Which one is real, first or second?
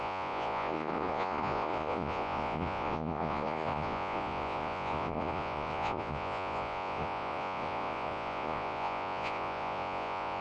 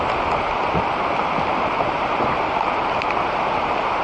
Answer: second